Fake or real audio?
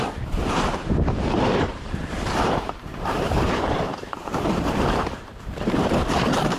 fake